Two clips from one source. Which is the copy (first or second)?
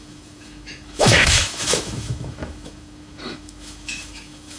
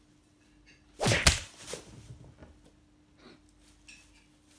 first